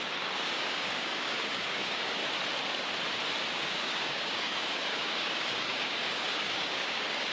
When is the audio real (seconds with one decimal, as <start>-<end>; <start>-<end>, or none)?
2.2-3.5